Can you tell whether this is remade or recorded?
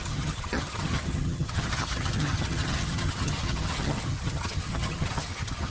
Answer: remade